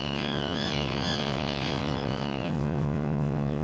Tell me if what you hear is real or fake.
fake